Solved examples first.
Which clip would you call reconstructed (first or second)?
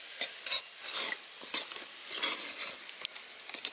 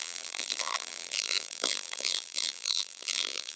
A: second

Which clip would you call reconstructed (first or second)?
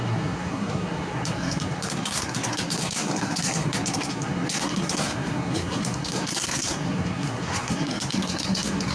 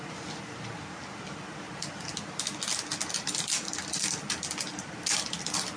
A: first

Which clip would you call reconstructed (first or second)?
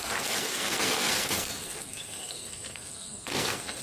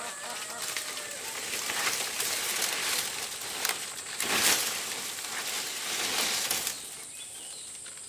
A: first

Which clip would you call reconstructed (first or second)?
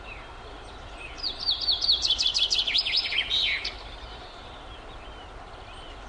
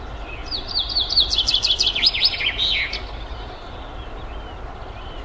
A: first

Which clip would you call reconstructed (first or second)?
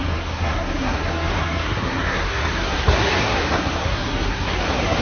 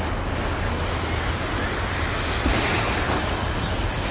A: first